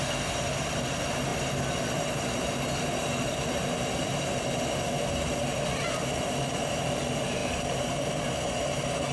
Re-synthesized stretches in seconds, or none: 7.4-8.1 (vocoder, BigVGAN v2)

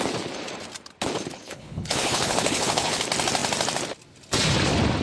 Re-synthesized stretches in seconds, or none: 1.3-3.0 (codec, HILCodec)

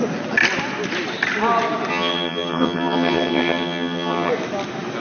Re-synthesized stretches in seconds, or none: 1.9-4.3 (vocoder, HiFi-GAN)

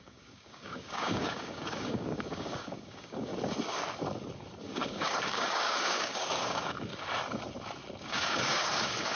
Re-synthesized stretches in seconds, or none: 0.0-3.3 (codec, DAC); 4.6-6.9; 8.1-9.1

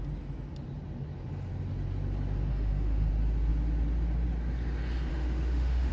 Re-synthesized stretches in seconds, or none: 2.5-3.1 (autoencoder, DAC-VAE); 5.1-5.9